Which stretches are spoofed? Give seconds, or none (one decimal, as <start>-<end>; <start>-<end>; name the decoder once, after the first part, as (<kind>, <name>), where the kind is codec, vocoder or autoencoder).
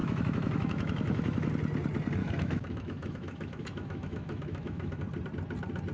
0.0-1.5 (autoencoder, DAC-VAE); 2.2-5.0